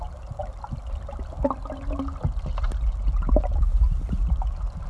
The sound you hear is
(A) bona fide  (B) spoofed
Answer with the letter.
A